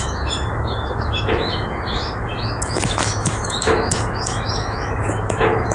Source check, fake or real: fake